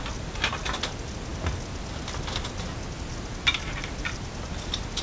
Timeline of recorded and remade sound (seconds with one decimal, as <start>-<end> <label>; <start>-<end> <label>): 0.0-5.0 recorded